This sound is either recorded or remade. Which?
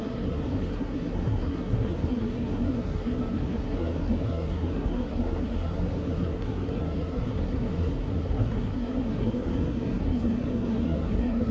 remade